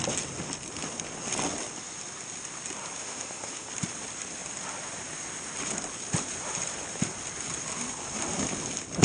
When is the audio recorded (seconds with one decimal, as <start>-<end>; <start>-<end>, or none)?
0.0-3.0; 3.7-9.0